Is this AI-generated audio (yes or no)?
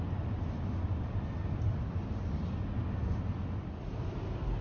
no